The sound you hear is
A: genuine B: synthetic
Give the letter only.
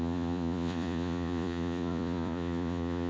B